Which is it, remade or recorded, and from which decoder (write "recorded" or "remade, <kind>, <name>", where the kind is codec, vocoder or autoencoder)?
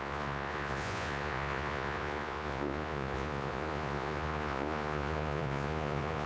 remade, vocoder, Vocos